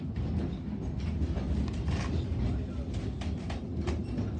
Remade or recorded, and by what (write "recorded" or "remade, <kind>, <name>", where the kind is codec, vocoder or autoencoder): recorded